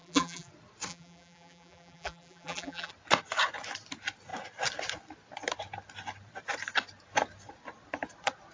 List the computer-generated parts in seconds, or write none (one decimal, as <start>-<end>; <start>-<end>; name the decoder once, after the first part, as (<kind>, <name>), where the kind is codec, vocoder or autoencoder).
0.0-0.5 (vocoder, BigVGAN v2); 0.9-2.9